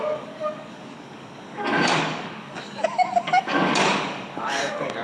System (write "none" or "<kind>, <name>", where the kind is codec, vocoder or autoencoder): codec, DAC